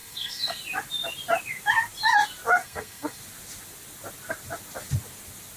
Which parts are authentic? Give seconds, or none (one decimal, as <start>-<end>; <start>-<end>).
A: 0.6-2.6; 3.2-5.6